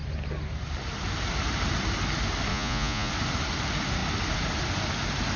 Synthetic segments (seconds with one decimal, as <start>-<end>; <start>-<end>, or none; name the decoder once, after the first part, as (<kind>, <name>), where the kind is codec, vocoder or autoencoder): 2.5-3.1 (vocoder, Vocos)

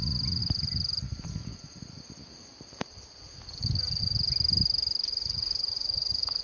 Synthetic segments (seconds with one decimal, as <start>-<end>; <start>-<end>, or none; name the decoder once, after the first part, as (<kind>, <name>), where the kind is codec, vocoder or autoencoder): 5.1-6.4 (vocoder, Vocos)

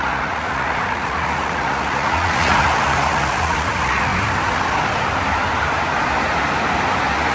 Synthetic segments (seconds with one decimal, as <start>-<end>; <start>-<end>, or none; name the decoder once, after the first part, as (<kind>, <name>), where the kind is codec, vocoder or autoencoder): 0.0-4.1 (vocoder, Vocos)

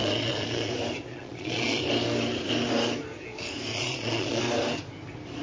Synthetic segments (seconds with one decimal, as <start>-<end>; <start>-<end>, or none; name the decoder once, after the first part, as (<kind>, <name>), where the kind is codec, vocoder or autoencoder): 0.0-0.7 (vocoder, Vocos); 1.1-1.8; 3.7-4.4

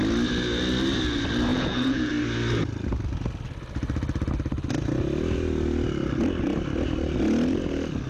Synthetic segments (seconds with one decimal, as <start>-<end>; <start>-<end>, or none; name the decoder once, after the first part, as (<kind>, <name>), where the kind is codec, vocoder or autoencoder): 1.5-2.1 (vocoder, Vocos)

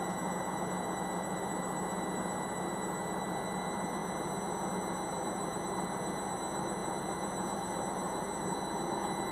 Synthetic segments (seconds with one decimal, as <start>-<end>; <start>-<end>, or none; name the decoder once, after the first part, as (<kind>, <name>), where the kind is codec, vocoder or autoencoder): none

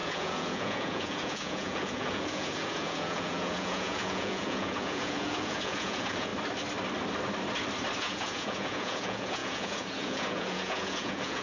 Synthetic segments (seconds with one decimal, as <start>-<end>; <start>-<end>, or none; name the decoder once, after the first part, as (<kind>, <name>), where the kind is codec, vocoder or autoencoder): 0.0-6.3 (vocoder, Vocos); 8.0-11.4

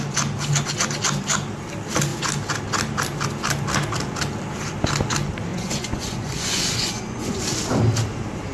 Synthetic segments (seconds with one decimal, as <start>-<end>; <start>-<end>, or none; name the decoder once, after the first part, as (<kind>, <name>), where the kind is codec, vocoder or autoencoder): 5.5-7.4 (vocoder, Vocos)